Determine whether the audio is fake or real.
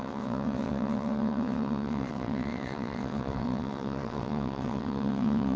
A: fake